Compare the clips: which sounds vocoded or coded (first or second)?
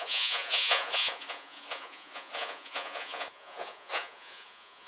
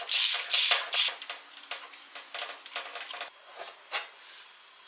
first